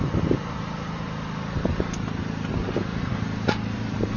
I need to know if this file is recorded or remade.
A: remade